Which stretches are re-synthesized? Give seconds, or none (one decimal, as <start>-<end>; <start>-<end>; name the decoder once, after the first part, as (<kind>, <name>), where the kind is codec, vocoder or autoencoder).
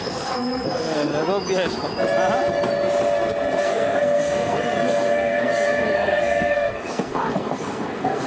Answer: 0.0-1.1 (codec, SNAC); 3.6-8.3